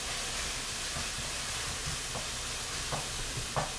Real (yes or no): yes